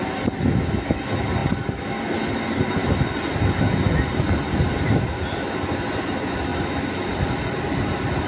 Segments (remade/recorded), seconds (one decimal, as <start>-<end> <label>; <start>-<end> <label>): 0.0-8.3 recorded